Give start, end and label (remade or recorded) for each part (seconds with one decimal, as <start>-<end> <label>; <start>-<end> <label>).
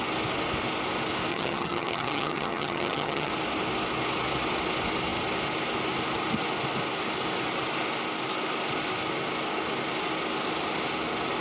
0.0-1.3 recorded; 1.3-3.3 remade; 3.3-11.4 recorded